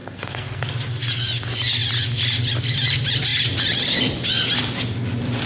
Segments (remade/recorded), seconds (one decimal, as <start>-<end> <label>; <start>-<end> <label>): 0.0-0.6 remade; 0.6-5.5 recorded